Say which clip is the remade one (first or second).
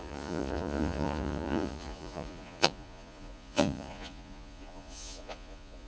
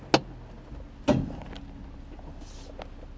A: first